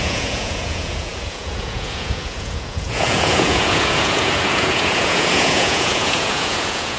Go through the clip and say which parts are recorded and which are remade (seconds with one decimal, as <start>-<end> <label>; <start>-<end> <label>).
0.0-7.0 remade